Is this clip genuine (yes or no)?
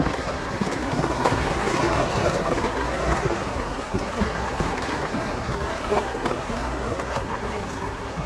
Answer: no